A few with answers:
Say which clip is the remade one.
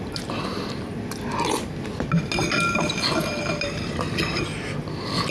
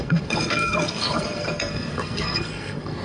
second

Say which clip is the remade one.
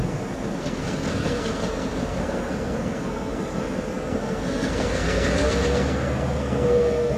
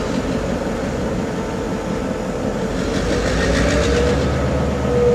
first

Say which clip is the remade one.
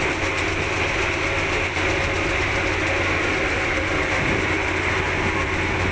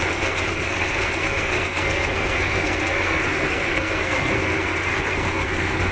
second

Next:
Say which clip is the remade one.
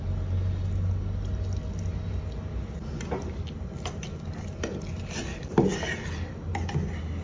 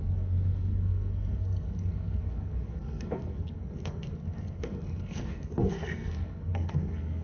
second